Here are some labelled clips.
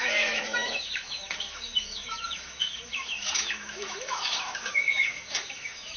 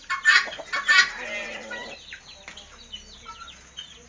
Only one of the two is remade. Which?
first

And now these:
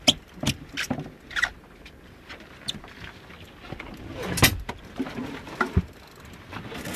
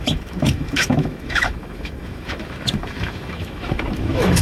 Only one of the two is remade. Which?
second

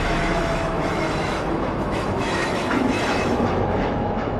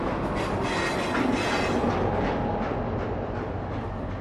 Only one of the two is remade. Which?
first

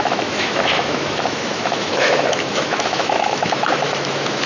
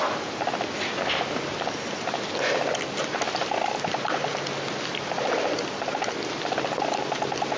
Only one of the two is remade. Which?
first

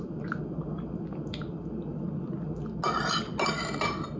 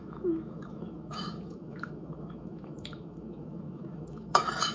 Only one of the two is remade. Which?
second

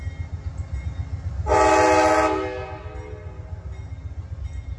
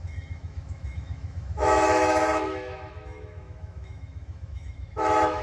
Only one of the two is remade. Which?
second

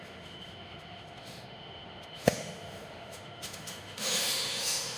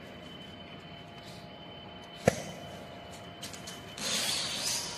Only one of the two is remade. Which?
first